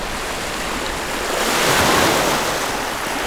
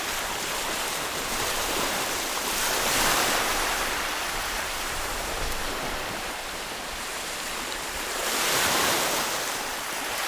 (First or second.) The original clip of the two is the first